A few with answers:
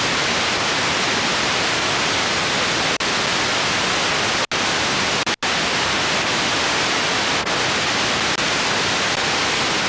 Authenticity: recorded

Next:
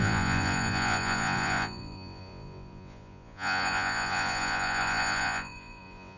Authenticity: remade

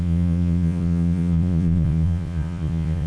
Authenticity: remade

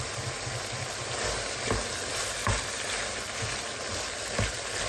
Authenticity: recorded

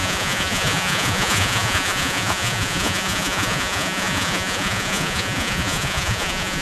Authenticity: remade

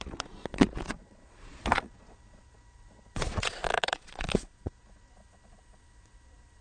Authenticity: remade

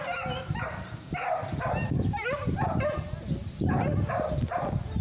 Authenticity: recorded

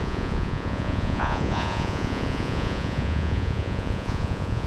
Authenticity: remade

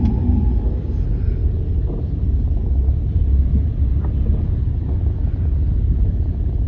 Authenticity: recorded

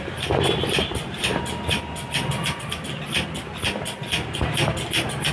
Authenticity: recorded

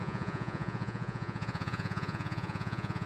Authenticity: remade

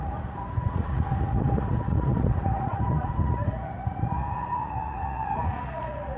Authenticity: remade